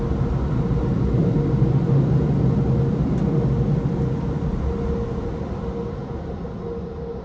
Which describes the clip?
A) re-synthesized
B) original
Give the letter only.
B